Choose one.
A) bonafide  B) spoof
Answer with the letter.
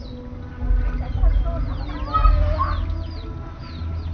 A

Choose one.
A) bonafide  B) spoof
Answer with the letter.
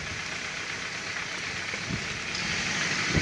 A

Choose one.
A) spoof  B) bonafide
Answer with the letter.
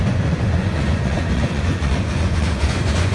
A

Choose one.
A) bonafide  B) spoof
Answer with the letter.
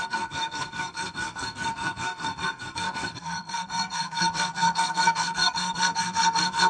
B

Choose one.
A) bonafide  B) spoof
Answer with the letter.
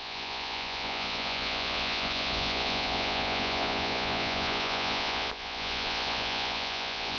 B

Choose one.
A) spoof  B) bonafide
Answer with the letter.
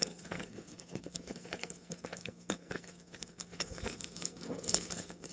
A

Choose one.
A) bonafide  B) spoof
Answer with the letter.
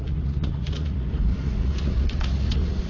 B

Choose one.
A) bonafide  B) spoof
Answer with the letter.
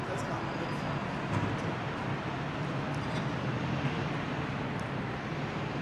A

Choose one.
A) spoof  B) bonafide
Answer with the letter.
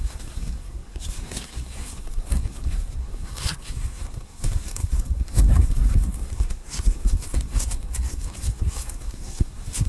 A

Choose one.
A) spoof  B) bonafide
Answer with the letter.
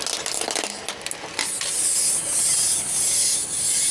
B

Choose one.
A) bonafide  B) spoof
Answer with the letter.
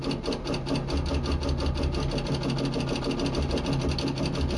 A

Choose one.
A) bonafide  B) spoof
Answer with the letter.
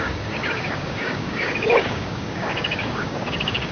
B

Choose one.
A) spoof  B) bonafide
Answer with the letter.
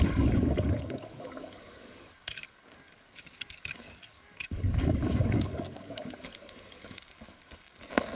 A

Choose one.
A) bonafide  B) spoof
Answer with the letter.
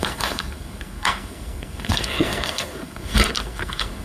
B